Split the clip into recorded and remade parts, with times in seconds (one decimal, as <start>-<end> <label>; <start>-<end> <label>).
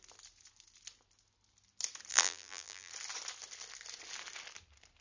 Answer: 0.0-2.1 recorded; 2.1-2.9 remade; 2.9-5.0 recorded